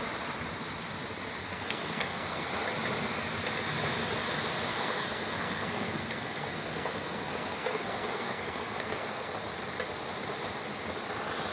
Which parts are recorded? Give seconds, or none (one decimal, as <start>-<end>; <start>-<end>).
0.0-1.4; 2.5-4.7; 9.4-11.5